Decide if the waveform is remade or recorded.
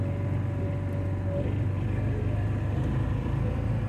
recorded